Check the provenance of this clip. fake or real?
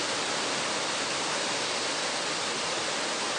real